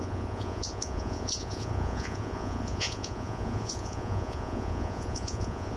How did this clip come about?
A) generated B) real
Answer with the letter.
A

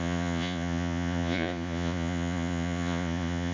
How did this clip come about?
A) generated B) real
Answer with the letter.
A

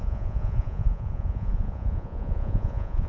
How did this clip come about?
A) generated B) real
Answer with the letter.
A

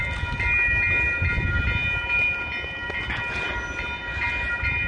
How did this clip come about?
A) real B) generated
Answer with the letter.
A